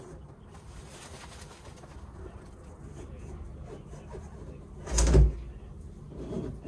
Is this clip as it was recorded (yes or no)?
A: yes